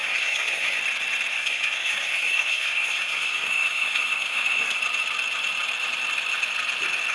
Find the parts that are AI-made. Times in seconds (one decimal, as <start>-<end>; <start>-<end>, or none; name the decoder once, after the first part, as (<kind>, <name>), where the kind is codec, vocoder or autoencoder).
0.0-0.8 (codec, SNAC); 1.3-4.8